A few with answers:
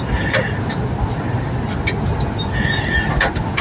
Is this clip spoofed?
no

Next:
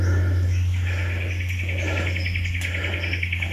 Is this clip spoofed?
no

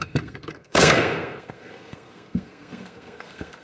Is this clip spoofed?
yes